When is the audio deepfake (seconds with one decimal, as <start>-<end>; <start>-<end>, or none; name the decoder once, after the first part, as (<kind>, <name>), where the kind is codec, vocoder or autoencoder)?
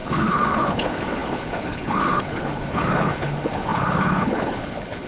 0.0-5.1 (codec, HILCodec)